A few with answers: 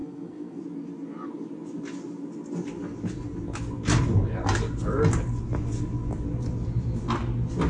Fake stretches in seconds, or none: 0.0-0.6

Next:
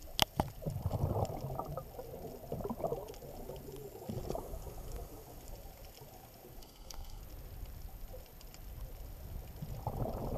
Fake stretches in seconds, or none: 6.6-7.2

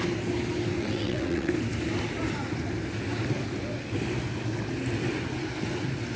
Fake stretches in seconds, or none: 0.8-1.5

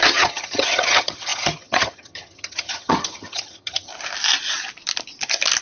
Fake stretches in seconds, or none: 0.0-3.9

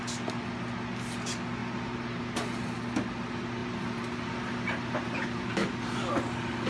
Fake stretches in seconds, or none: 1.6-2.2; 3.6-5.5

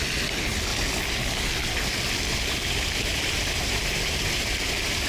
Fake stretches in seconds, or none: 2.3-5.1

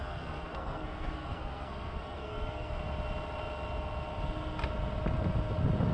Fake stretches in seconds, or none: 0.0-2.7